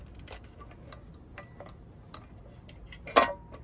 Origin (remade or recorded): recorded